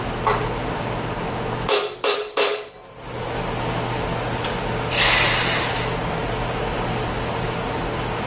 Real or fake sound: real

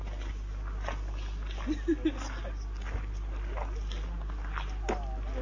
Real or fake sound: real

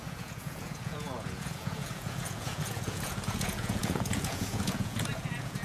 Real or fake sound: fake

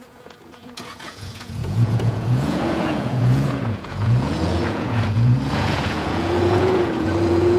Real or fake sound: fake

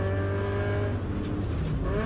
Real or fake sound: real